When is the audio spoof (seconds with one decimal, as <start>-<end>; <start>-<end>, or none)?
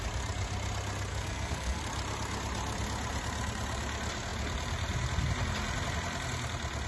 1.1-1.8